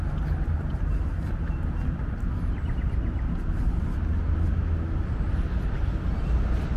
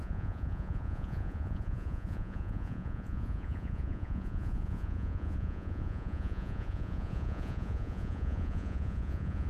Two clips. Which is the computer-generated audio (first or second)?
second